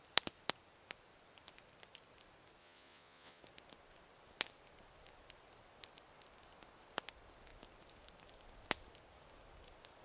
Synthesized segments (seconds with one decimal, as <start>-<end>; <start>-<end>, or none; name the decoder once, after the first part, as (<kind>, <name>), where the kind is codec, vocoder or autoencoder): 2.6-3.4 (vocoder, Vocos)